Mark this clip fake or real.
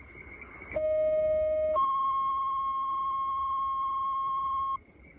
real